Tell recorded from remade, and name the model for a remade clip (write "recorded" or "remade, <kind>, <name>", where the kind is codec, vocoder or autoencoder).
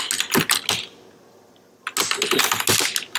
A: recorded